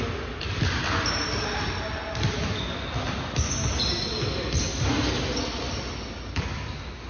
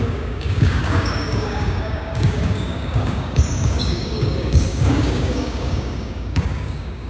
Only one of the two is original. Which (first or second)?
first